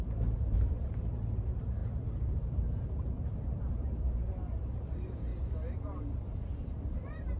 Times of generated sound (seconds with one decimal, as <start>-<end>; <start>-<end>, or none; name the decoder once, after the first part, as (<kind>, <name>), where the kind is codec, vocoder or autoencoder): 0.0-5.3 (vocoder, BigVGAN v2); 6.1-7.4